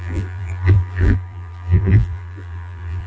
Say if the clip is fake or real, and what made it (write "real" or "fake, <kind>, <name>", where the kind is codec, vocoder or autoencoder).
fake, vocoder, BigVGAN v2